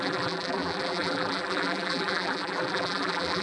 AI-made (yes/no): yes